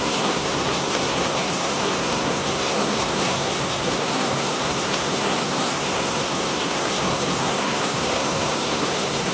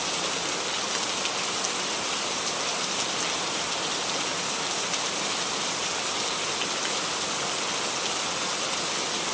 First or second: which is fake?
first